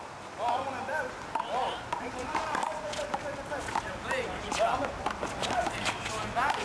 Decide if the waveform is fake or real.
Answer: real